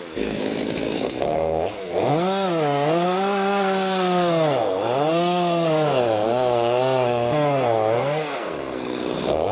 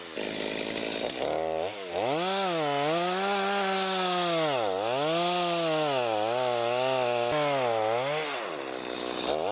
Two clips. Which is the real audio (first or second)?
second